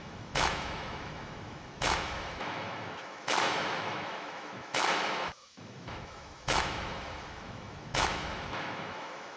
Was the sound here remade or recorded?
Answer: remade